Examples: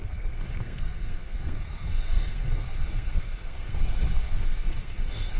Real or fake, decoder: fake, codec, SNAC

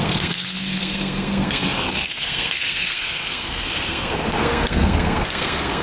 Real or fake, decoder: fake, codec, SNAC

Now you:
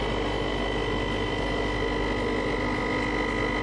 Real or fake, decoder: real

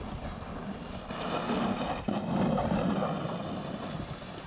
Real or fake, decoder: real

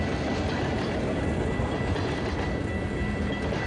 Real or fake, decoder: real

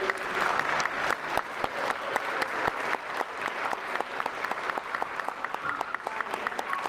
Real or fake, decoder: real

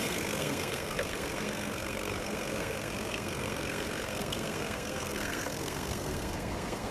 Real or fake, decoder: fake, codec, SNAC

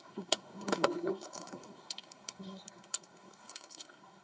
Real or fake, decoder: fake, codec, SNAC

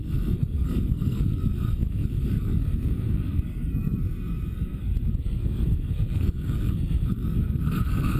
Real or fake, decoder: fake, codec, SNAC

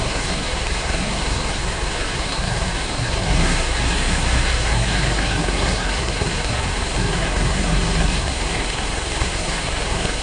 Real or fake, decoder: fake, codec, SNAC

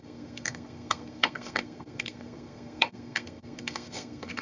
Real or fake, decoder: fake, codec, SNAC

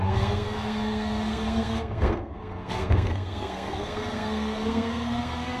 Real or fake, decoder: fake, codec, SNAC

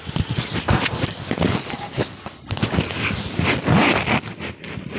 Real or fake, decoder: real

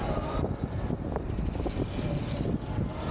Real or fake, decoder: real